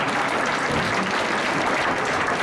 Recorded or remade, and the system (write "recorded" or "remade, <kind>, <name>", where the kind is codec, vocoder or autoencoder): recorded